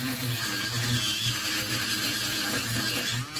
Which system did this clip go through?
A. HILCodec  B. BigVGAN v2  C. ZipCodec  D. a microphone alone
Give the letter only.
D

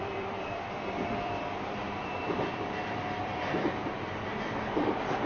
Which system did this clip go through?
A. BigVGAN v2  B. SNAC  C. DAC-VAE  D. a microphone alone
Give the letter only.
A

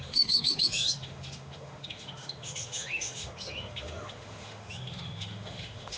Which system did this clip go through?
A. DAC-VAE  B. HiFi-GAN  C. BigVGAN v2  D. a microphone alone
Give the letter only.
A